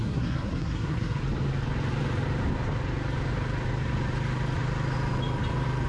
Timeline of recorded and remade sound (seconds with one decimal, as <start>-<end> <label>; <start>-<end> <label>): 0.0-1.2 remade; 1.2-5.9 recorded